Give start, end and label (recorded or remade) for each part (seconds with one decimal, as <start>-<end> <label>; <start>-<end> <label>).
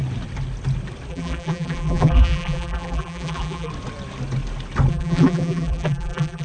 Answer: 0.0-1.1 recorded; 1.1-3.7 remade; 3.7-4.9 recorded; 4.9-6.4 remade